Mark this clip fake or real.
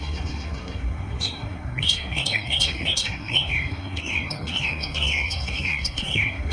fake